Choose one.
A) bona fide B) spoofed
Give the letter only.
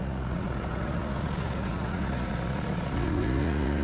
B